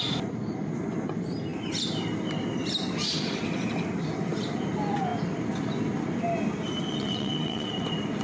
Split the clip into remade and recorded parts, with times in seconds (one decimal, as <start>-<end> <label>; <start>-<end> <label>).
0.0-6.9 recorded; 6.9-7.7 remade; 7.7-8.2 recorded